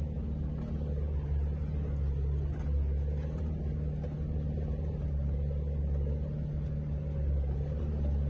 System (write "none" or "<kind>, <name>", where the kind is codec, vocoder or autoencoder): none